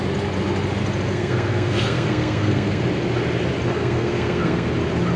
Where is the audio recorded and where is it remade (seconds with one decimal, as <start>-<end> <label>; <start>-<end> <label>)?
0.0-1.1 recorded; 1.1-2.8 remade; 2.8-3.7 recorded; 3.7-4.7 remade; 4.7-5.2 recorded